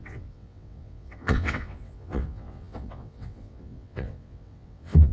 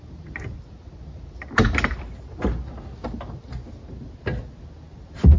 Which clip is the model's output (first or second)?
first